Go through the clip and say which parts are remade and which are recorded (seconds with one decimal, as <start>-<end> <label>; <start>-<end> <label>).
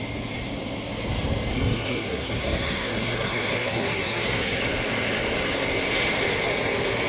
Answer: 0.0-1.5 recorded; 1.5-4.6 remade; 4.6-7.1 recorded